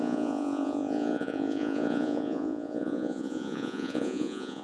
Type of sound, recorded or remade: remade